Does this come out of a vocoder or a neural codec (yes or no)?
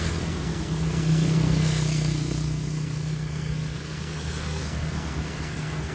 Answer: yes